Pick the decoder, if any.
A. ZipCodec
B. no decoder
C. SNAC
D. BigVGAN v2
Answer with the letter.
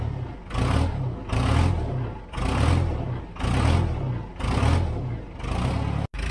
B